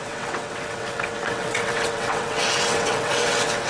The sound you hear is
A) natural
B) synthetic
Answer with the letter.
B